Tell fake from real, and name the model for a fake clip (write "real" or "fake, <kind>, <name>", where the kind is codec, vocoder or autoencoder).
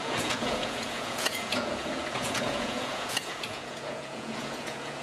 fake, vocoder, Vocos